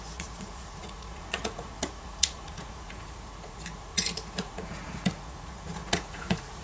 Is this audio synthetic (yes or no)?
yes